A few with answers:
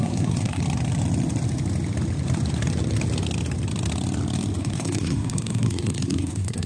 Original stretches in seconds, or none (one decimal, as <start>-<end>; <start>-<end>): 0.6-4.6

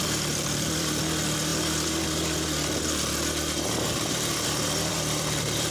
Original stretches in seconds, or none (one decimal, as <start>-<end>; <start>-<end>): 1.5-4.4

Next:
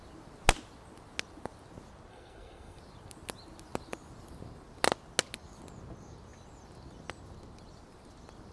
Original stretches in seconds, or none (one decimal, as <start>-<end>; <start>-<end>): 0.0-2.1; 2.8-8.5

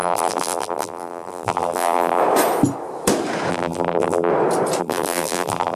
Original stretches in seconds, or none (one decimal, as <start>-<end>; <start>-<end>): 2.2-3.5; 4.3-4.8